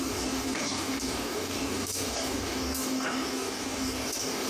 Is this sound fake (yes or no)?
yes